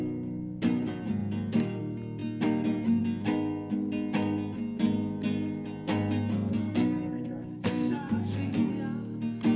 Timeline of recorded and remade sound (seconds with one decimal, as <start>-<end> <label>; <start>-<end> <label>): 0.0-6.5 recorded; 6.5-8.7 remade; 8.7-9.6 recorded

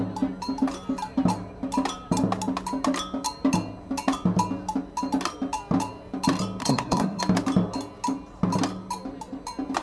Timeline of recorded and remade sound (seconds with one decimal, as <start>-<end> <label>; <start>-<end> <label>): 0.0-6.6 recorded; 6.6-7.2 remade; 7.2-9.8 recorded

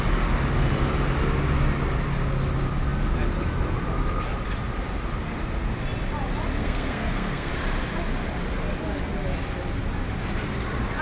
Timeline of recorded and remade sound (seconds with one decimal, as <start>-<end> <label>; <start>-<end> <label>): 0.0-6.6 recorded; 6.6-7.5 remade; 7.5-11.0 recorded

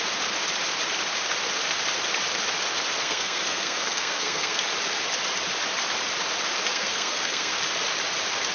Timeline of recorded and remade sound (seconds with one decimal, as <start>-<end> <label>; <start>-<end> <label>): 0.0-3.0 recorded; 3.0-4.6 remade; 4.6-6.7 recorded; 6.7-7.5 remade; 7.5-8.5 recorded

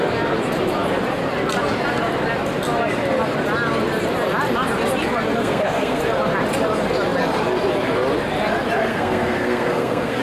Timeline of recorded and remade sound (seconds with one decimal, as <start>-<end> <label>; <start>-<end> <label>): 0.0-5.4 recorded; 5.4-6.0 remade; 6.0-8.8 recorded; 8.8-10.2 remade